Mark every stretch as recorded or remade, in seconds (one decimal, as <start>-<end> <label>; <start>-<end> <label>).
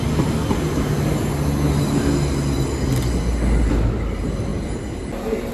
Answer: 0.0-5.5 recorded